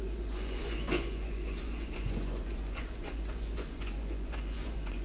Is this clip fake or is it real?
fake